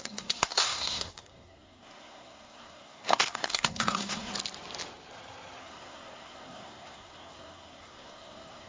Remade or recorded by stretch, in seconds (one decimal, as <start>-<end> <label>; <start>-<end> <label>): 0.0-4.3 remade; 4.3-5.6 recorded; 5.6-8.7 remade